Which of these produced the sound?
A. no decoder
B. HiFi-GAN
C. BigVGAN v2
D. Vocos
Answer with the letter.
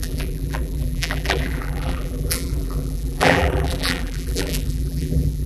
C